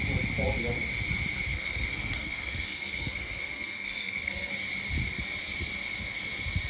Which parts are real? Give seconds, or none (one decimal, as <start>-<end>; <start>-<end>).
0.0-1.5; 4.5-6.7